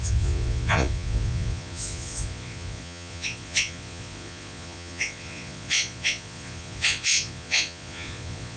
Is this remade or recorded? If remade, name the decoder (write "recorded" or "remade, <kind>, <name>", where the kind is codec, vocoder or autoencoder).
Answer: remade, vocoder, Vocos